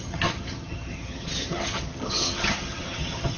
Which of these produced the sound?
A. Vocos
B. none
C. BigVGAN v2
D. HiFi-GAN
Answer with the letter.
D